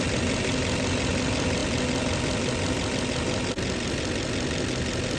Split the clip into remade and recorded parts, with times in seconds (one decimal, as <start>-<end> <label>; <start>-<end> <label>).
0.0-5.2 recorded